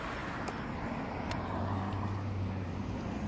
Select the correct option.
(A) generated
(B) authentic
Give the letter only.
B